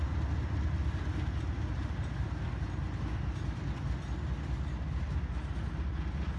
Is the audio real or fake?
real